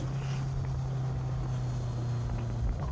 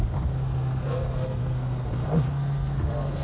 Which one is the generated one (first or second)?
second